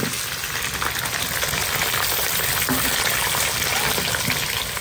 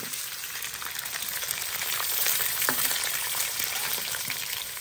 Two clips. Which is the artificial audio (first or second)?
second